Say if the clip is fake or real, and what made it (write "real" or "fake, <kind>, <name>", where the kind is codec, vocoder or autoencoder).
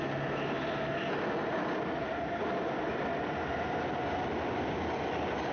real